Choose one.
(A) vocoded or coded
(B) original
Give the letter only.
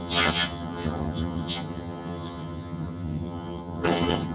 A